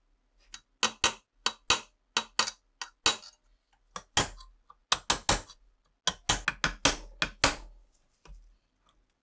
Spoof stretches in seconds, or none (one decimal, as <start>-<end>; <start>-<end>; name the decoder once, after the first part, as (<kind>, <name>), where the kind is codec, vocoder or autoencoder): none